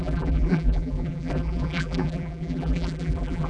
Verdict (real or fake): fake